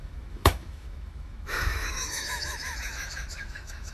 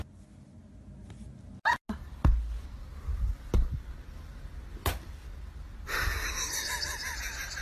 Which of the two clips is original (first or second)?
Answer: second